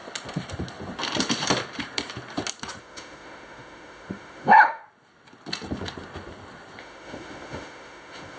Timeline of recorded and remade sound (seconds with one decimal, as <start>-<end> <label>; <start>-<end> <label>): 0.0-2.8 recorded; 2.8-4.8 remade; 4.8-6.8 recorded; 6.8-8.4 remade